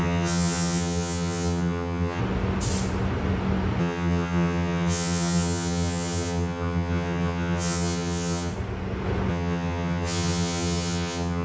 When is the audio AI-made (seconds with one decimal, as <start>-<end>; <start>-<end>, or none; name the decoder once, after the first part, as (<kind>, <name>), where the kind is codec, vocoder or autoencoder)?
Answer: 0.0-2.2 (vocoder, HiFi-GAN); 3.8-8.5; 9.3-11.4